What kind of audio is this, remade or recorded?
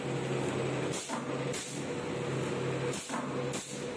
recorded